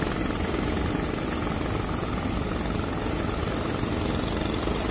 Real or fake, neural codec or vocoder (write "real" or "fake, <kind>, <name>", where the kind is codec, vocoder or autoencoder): real